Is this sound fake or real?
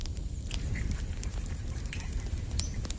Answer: fake